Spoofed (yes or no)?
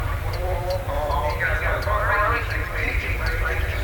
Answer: yes